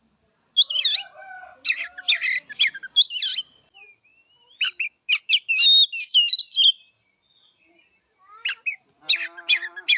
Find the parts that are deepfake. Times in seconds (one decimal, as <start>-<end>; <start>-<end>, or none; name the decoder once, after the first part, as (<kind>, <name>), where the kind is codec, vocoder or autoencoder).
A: none